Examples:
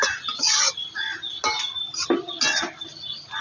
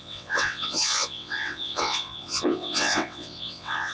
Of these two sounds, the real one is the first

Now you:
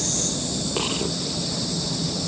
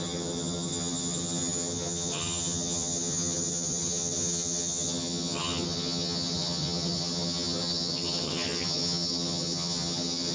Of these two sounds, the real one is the first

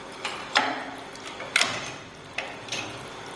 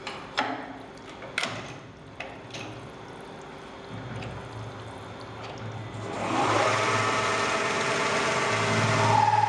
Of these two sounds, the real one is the second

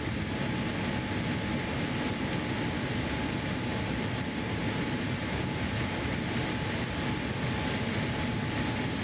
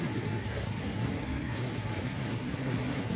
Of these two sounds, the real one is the first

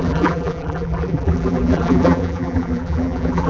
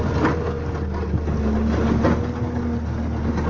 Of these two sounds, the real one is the second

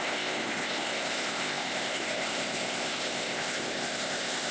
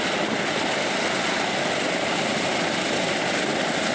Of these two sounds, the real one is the second